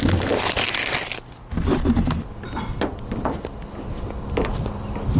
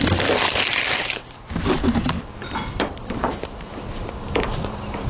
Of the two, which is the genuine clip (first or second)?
first